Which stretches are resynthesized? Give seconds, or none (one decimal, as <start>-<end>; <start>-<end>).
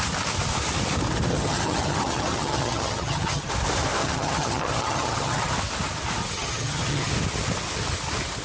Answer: 1.3-3.5; 4.0-5.5; 6.2-7.1